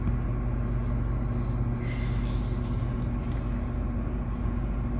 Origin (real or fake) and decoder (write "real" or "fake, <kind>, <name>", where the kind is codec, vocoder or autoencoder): real